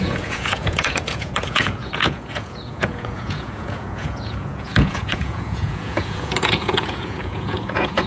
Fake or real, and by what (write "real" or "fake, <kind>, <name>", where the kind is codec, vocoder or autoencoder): fake, vocoder, Vocos